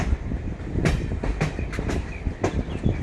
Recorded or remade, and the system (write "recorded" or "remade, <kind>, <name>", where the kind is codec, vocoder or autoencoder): recorded